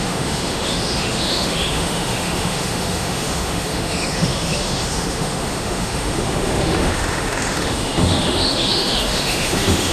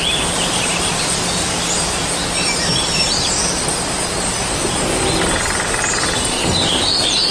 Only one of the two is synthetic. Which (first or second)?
first